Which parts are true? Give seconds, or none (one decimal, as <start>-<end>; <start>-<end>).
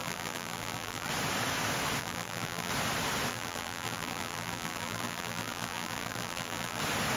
1.1-2.0; 2.7-3.3; 6.8-7.2